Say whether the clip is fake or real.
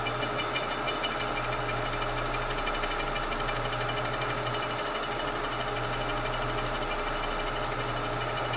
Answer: real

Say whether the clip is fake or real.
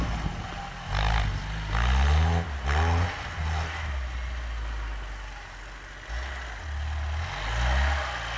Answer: real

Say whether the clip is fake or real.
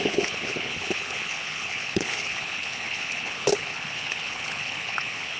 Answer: fake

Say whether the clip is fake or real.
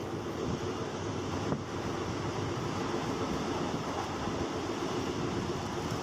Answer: real